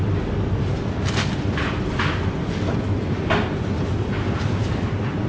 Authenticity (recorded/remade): recorded